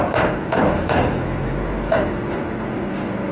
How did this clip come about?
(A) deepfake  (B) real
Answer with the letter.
B